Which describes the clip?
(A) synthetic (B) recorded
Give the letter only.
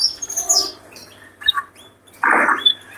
A